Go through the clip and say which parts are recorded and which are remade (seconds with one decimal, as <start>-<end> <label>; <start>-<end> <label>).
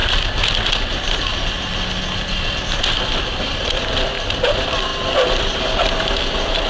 0.0-3.4 recorded; 3.4-6.7 remade